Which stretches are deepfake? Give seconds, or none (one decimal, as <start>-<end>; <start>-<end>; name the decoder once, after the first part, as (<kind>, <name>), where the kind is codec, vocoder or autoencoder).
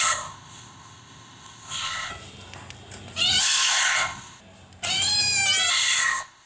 0.0-2.1 (codec, ZipCodec); 3.4-4.4; 5.7-6.5